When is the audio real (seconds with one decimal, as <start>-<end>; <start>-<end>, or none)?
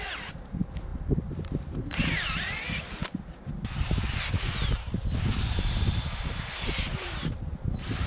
0.9-5.2